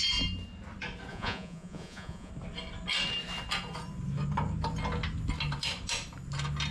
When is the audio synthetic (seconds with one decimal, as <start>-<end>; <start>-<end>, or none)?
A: 1.1-2.3